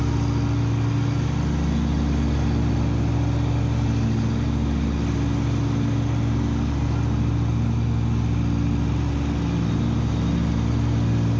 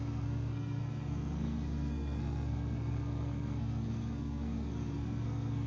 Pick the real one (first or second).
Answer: first